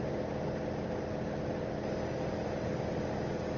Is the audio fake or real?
real